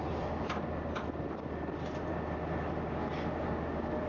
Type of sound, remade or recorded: recorded